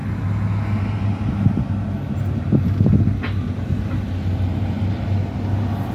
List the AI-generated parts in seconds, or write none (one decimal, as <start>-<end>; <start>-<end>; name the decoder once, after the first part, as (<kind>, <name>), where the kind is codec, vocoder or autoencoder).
none